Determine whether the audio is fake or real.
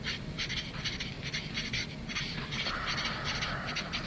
real